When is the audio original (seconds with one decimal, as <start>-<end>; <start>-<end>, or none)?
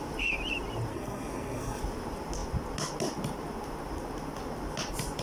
0.0-0.9; 1.8-5.2